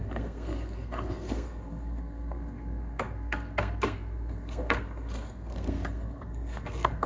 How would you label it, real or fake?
fake